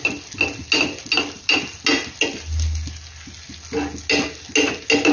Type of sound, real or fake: real